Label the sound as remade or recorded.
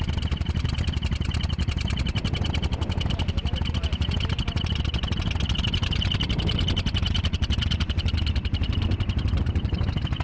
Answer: recorded